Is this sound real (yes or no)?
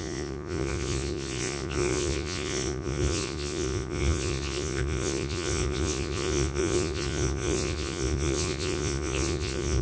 no